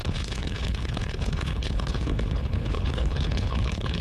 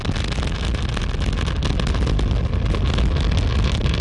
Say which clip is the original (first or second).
second